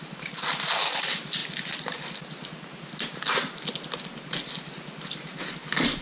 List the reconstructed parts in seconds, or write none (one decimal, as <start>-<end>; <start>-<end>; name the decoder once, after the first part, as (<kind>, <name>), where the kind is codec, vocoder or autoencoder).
0.0-1.4 (vocoder, BigVGAN v2); 5.0-6.0

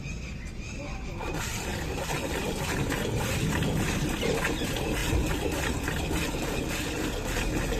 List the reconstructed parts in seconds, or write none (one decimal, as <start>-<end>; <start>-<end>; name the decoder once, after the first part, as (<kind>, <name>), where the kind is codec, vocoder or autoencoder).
1.7-3.5 (vocoder, BigVGAN v2); 5.0-6.7

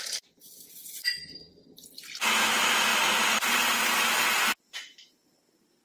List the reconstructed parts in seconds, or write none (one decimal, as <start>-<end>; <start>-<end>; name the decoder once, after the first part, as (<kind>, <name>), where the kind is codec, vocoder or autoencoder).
none

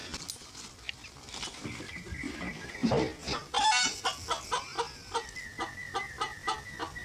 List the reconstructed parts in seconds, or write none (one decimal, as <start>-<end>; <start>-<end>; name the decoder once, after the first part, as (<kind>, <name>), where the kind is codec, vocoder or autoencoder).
3.2-3.7 (vocoder, BigVGAN v2)

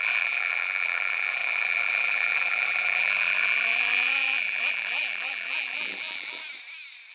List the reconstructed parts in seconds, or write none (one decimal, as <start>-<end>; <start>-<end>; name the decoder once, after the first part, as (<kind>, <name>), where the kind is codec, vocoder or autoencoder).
0.0-6.4 (vocoder, BigVGAN v2)